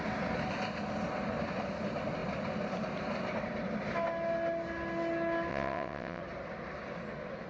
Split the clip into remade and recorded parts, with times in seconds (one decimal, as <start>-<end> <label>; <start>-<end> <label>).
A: 0.0-5.5 recorded; 5.5-6.2 remade; 6.2-7.5 recorded